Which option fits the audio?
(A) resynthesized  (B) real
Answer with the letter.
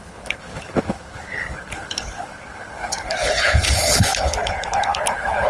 A